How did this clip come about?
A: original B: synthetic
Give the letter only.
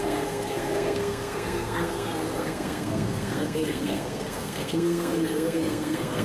B